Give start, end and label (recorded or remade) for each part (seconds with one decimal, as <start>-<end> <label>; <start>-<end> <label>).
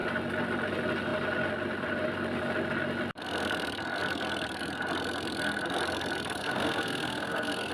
0.0-6.4 recorded; 6.4-7.7 remade